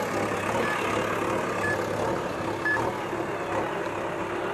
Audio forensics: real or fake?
real